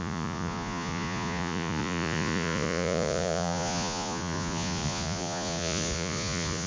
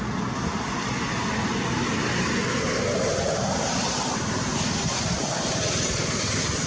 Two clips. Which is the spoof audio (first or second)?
first